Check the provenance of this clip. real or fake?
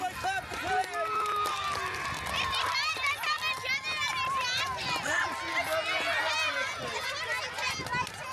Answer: real